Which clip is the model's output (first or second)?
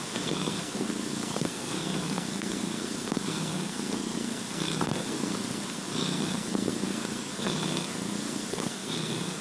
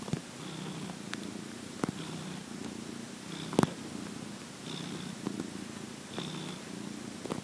first